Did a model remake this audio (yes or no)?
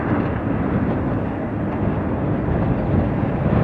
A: no